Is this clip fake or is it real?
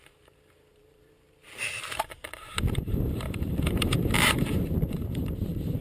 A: fake